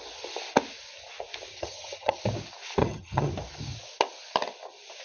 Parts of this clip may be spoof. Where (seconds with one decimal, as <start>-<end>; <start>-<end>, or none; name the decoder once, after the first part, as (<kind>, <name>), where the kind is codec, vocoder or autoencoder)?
1.5-2.2 (vocoder, HiFi-GAN); 2.8-3.3